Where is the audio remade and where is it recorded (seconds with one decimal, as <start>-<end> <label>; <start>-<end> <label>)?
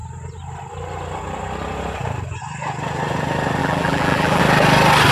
0.0-3.6 recorded; 3.6-4.4 remade; 4.4-5.1 recorded